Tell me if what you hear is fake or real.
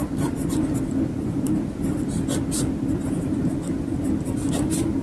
real